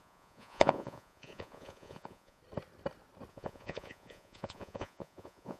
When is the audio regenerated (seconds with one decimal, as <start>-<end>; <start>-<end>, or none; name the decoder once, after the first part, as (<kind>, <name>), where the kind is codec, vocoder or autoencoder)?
0.0-2.4 (vocoder, Vocos); 3.3-5.6